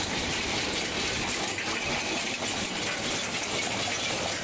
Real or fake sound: real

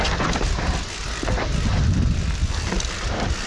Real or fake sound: real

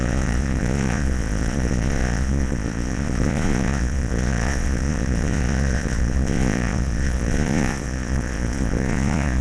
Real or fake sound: fake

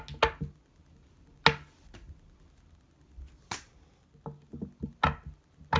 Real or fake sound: real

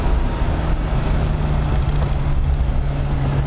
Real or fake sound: real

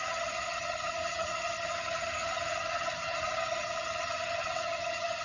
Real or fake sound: fake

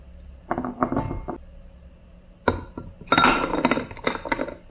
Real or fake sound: real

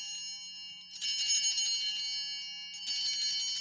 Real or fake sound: real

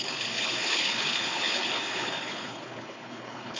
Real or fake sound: fake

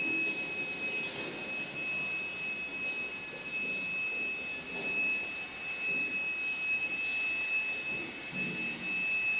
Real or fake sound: real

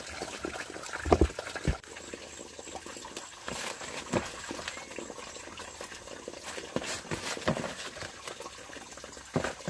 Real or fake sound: real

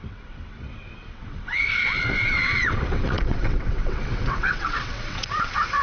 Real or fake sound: fake